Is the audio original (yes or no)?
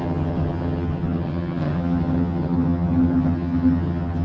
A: no